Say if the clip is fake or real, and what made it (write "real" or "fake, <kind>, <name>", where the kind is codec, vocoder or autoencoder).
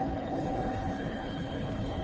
fake, codec, HILCodec